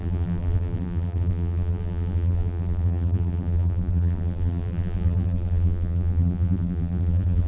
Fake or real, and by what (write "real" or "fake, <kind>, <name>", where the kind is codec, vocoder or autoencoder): fake, vocoder, BigVGAN v2